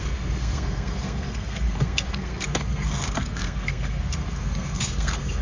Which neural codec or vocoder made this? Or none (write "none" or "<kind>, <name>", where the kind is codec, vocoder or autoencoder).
codec, SNAC